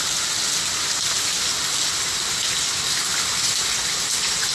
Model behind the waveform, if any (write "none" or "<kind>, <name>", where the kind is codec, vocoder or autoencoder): none